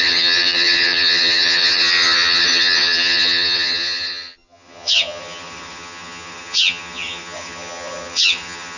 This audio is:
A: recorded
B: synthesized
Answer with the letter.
B